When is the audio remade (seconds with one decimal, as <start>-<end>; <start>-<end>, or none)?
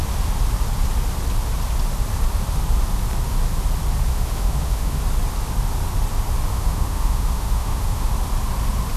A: 4.1-5.0; 6.5-8.1